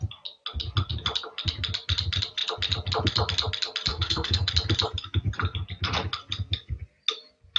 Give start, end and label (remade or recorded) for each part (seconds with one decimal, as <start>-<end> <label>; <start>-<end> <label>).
0.0-3.9 recorded; 3.9-4.5 remade; 4.5-7.6 recorded